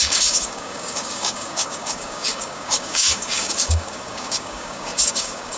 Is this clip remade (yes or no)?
yes